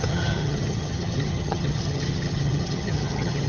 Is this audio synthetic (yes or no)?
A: yes